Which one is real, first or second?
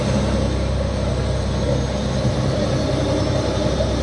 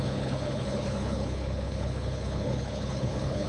first